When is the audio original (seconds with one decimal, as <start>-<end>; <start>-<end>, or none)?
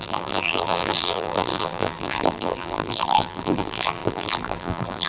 none